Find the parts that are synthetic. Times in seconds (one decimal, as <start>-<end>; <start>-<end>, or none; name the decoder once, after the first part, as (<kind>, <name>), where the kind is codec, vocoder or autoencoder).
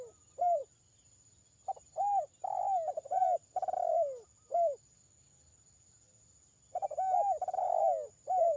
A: none